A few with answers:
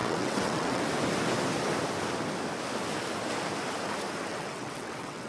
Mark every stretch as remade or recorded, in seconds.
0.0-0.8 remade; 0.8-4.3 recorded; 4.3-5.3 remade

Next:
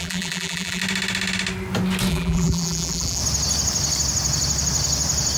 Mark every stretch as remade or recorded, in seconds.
0.0-0.8 remade; 0.8-2.1 recorded; 2.1-3.2 remade; 3.2-5.4 recorded